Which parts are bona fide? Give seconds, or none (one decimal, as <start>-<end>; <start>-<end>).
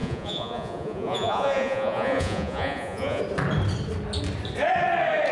3.2-5.3